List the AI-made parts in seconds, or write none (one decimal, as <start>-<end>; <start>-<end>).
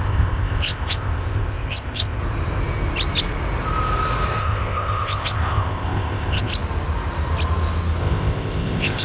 0.0-2.2; 4.4-6.5; 8.0-9.0